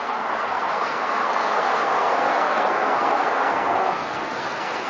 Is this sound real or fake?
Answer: fake